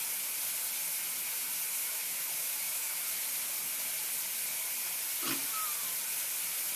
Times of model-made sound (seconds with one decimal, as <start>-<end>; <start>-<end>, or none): 1.8-3.0